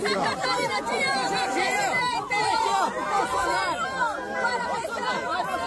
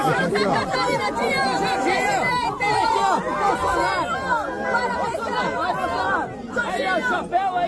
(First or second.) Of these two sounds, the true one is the second